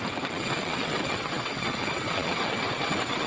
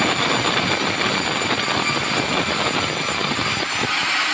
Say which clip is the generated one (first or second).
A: first